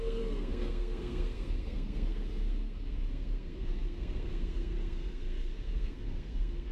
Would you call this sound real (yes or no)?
no